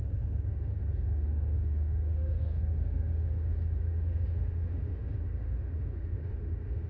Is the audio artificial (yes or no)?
yes